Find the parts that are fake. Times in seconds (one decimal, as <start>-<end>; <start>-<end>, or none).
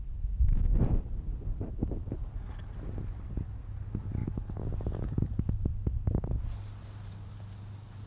none